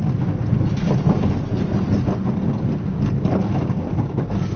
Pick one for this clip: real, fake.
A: real